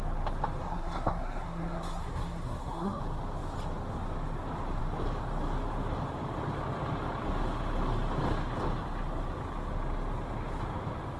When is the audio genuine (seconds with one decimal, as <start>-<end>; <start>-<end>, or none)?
0.0-0.6; 3.0-11.2